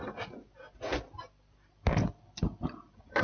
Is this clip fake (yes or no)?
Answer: no